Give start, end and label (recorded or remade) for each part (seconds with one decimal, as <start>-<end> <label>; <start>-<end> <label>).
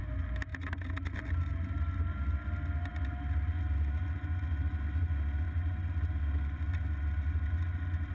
0.0-8.1 recorded